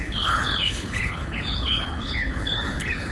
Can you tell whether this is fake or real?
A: fake